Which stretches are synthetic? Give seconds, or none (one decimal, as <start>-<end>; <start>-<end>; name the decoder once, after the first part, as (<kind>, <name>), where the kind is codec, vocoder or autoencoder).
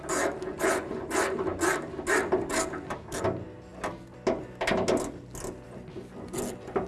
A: 0.5-1.1 (vocoder, Vocos)